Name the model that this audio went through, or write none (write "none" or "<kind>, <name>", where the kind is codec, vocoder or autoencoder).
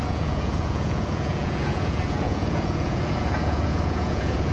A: vocoder, Vocos